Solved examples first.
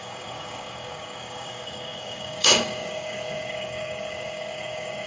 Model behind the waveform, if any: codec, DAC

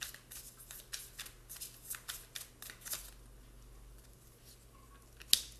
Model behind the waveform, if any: none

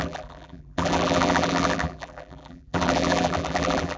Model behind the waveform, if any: vocoder, BigVGAN v2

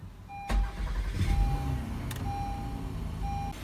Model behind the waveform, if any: none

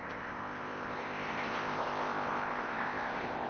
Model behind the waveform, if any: codec, ZipCodec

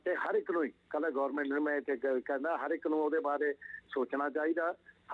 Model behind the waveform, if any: none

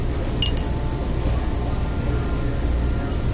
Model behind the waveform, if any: none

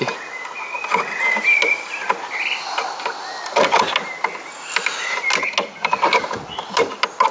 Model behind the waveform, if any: none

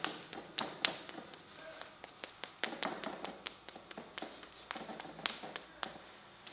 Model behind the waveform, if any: none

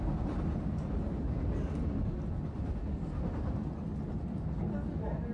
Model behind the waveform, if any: none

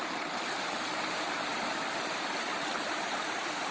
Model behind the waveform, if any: vocoder, BigVGAN v2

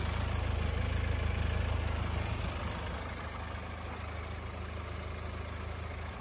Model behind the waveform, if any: none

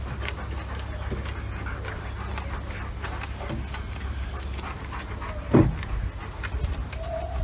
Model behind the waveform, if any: none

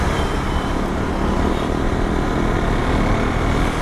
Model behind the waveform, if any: none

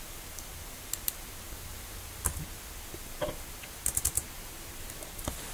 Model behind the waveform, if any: none